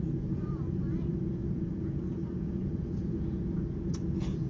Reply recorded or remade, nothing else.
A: remade